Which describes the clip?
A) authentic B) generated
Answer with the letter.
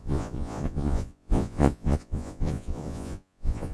B